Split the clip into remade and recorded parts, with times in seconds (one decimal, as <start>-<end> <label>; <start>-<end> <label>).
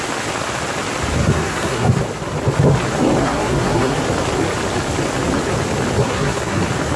0.0-1.2 recorded; 1.2-2.0 remade; 2.0-3.2 recorded; 3.2-4.0 remade; 4.0-6.0 recorded; 6.0-6.6 remade; 6.6-7.0 recorded